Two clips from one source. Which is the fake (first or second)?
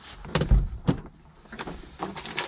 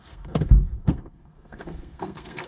second